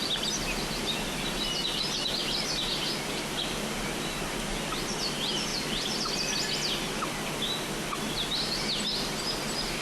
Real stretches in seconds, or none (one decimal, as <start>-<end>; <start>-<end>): 0.0-9.8